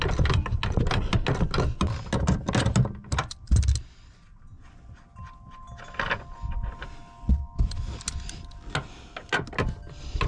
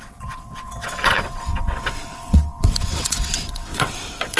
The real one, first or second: first